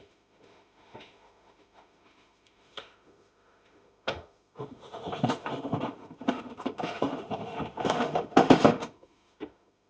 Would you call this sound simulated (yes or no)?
yes